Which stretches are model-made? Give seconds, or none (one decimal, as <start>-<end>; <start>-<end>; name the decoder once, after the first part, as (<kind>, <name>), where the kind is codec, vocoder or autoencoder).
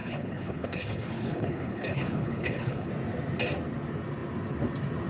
0.0-2.9 (codec, HILCodec)